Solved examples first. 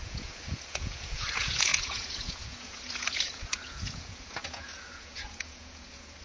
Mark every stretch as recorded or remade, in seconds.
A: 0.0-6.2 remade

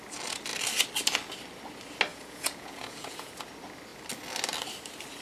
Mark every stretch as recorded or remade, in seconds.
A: 0.0-2.1 recorded; 2.1-3.3 remade; 3.3-5.2 recorded

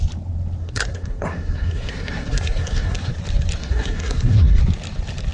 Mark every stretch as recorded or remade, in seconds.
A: 0.0-0.6 recorded; 0.6-3.1 remade; 3.1-3.6 recorded; 3.6-4.6 remade; 4.6-5.3 recorded

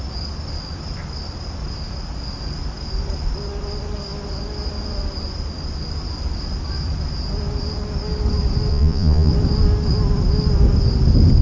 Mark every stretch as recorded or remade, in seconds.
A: 0.0-8.7 recorded; 8.7-9.3 remade; 9.3-11.4 recorded

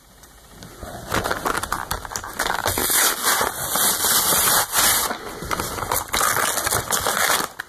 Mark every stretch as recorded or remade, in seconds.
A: 0.0-7.7 recorded

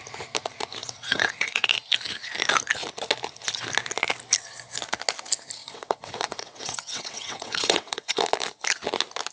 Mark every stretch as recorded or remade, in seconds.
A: 0.0-0.8 recorded; 0.8-1.7 remade; 1.7-5.6 recorded; 5.6-8.2 remade; 8.2-9.3 recorded

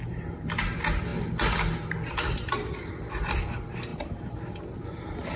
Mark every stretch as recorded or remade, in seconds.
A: 0.0-5.4 recorded